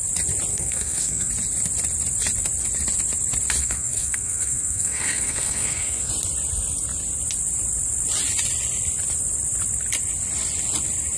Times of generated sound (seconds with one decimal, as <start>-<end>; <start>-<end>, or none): 0.5-1.3; 3.6-6.1